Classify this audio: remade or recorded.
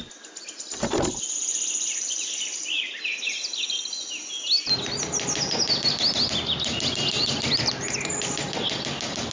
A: recorded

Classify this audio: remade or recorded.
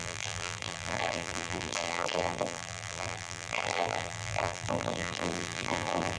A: remade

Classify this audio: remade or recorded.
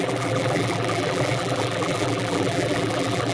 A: remade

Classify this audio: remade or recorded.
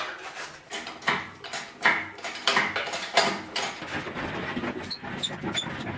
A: remade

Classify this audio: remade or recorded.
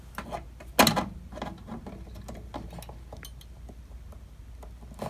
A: recorded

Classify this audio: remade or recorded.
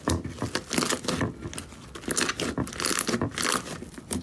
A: recorded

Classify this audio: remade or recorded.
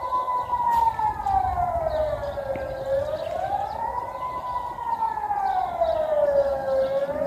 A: recorded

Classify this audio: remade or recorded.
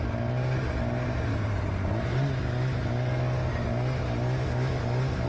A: recorded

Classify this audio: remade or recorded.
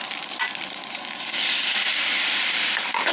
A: remade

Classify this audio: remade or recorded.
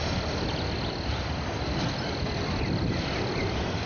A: remade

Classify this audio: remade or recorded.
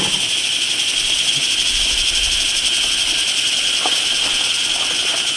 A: recorded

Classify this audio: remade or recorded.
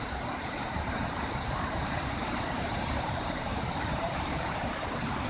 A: remade